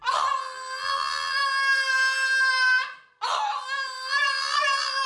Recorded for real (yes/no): yes